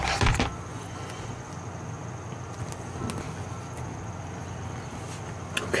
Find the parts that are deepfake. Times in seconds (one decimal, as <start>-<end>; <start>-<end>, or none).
0.7-1.6